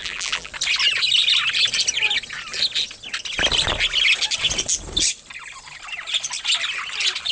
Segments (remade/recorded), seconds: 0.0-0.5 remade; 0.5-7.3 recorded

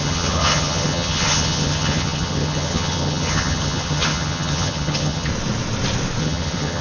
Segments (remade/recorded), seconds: 0.0-5.3 remade; 5.3-6.2 recorded; 6.2-6.8 remade

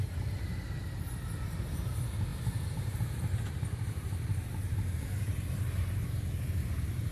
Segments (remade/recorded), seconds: 0.0-0.5 remade; 0.5-1.3 recorded; 1.3-7.1 remade

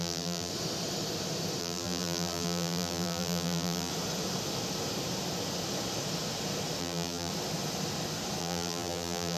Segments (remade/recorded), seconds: 0.0-0.5 remade; 0.5-1.6 recorded; 1.6-3.9 remade; 3.9-6.8 recorded; 6.8-7.3 remade; 7.3-8.4 recorded; 8.4-9.4 remade

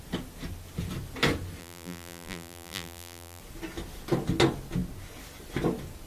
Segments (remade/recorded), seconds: 0.0-1.6 recorded; 1.6-3.4 remade; 3.4-6.1 recorded

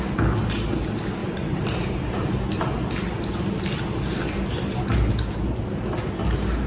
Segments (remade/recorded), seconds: 0.0-6.7 recorded

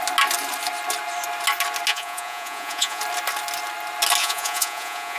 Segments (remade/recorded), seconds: 0.0-1.9 recorded; 1.9-3.0 remade; 3.0-4.2 recorded; 4.2-5.2 remade